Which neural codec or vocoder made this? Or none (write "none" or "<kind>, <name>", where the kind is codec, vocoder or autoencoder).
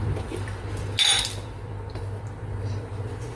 vocoder, BigVGAN v2